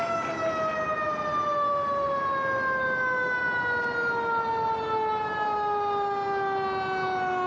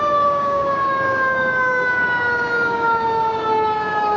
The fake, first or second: second